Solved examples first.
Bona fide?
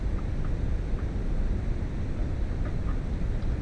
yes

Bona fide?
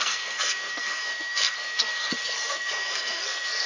no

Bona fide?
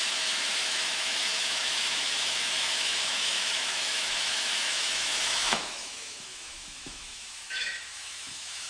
no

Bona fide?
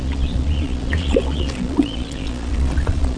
no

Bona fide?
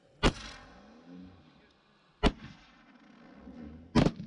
yes